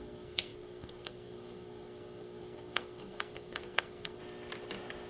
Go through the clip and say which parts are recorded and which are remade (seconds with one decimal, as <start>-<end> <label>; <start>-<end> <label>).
0.0-4.2 remade; 4.2-5.1 recorded